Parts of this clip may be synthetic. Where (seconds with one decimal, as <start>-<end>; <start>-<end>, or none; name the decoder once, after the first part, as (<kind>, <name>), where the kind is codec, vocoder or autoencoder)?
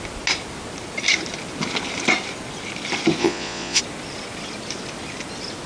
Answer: 3.2-3.8 (vocoder, Vocos)